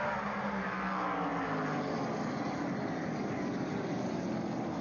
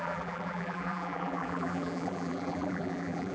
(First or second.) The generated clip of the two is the second